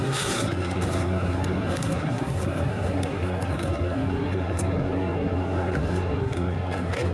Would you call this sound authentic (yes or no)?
no